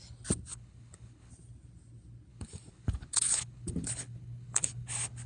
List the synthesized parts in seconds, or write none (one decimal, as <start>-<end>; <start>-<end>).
0.5-1.3; 2.3-5.3